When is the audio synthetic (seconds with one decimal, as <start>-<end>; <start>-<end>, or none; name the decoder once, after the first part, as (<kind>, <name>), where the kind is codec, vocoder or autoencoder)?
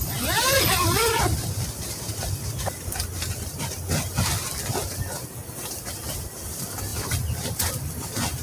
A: none